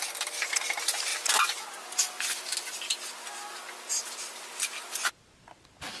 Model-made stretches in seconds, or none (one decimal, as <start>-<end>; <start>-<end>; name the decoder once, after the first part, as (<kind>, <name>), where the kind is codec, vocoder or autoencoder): none